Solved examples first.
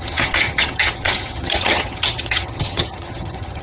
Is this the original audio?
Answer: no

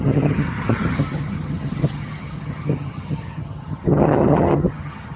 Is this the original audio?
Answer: no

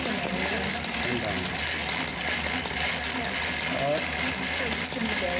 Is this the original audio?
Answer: yes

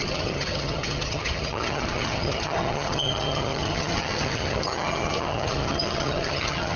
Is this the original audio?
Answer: no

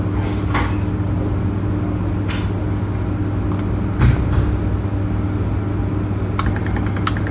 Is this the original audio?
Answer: yes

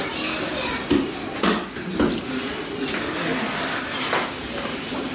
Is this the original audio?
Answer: yes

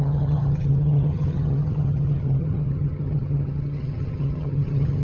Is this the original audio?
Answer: no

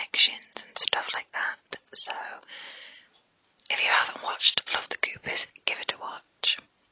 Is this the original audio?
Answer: yes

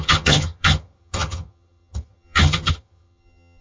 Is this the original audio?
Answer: no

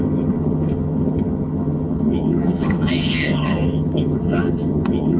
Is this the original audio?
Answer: no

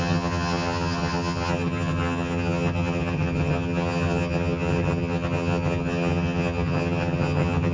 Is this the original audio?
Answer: no